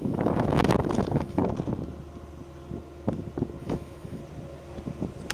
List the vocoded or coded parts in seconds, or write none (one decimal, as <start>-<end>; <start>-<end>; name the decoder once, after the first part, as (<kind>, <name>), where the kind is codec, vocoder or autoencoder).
0.0-1.4 (autoencoder, DAC-VAE); 3.6-4.2